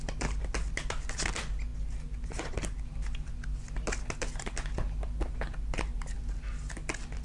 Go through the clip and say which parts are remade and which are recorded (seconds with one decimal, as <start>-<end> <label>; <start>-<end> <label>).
0.0-7.2 recorded